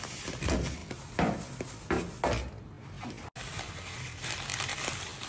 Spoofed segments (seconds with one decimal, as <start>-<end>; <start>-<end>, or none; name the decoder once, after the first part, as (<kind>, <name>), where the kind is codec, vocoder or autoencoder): none